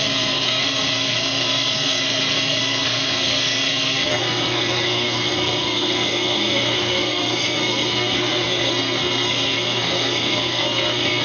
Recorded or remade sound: remade